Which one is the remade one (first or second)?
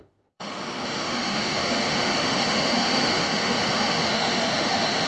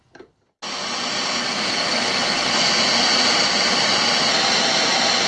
first